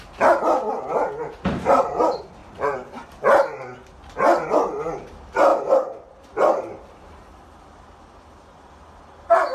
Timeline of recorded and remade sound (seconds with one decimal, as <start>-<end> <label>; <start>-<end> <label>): 0.0-2.4 recorded; 2.4-3.6 remade; 3.6-5.5 recorded; 5.5-7.6 remade; 7.6-9.5 recorded